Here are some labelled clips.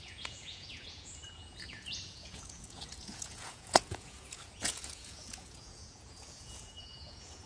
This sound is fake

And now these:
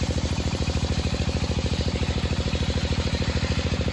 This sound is fake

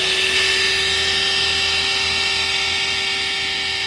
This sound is real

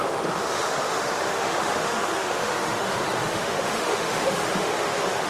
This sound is fake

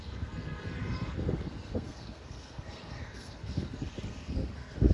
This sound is fake